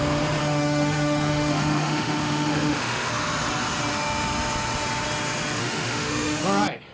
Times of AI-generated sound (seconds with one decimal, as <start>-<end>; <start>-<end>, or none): 0.4-3.1; 5.6-6.4